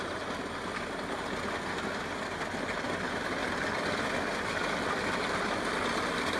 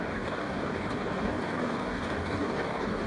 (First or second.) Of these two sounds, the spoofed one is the second